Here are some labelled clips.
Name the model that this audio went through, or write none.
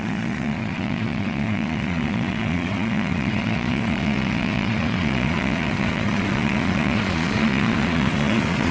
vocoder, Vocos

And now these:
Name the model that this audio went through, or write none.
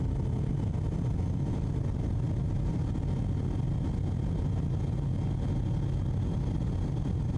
none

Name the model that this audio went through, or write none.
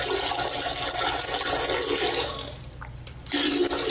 none